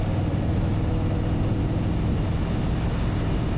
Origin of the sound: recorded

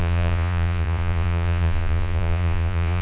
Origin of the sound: remade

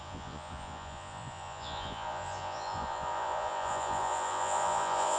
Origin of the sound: remade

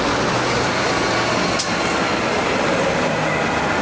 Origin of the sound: recorded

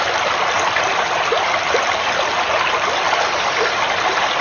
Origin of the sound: recorded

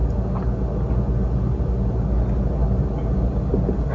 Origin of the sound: recorded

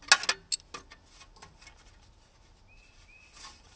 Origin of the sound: recorded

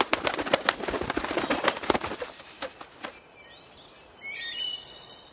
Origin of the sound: recorded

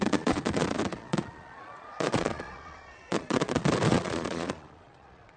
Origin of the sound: remade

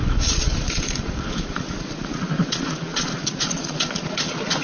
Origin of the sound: remade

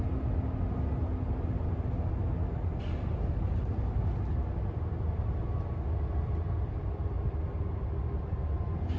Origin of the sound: recorded